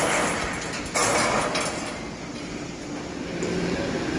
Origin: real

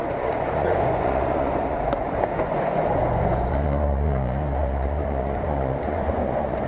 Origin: fake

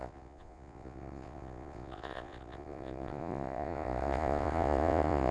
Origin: fake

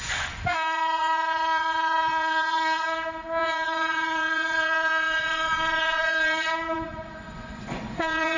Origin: fake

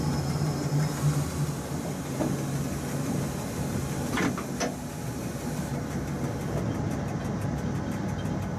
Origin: real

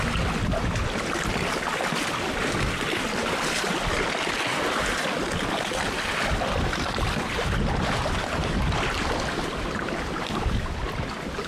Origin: real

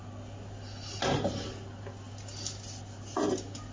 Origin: real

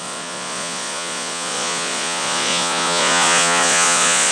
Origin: fake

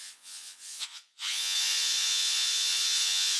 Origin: fake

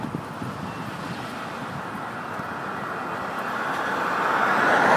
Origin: real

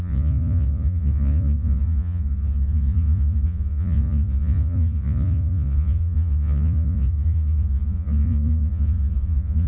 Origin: fake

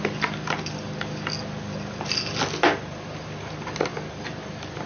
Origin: real